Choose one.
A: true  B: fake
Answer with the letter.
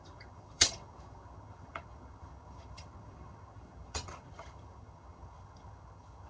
B